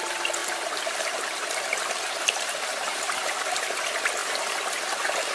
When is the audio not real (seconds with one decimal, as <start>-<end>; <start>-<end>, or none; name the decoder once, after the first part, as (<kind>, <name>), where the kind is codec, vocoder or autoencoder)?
0.4-3.6 (vocoder, BigVGAN v2)